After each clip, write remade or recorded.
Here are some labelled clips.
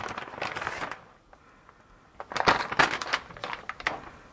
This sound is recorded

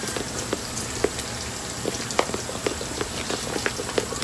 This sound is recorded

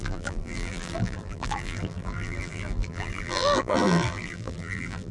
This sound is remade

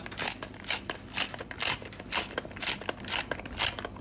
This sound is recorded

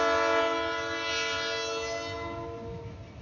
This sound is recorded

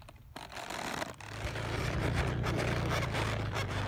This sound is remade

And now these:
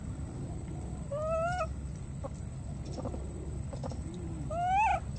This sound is recorded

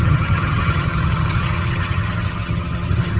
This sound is remade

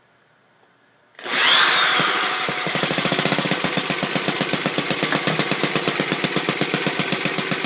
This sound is recorded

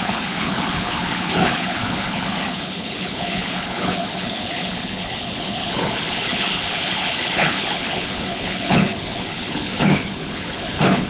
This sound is remade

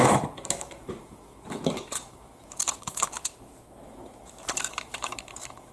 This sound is remade